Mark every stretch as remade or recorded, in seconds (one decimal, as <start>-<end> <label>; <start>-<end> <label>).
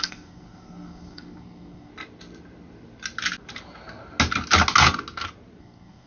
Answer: 0.0-1.9 remade; 1.9-5.6 recorded; 5.6-6.1 remade